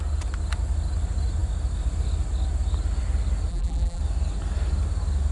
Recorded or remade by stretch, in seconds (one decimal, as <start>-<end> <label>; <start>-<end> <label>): 0.0-3.5 recorded; 3.5-4.0 remade; 4.0-5.3 recorded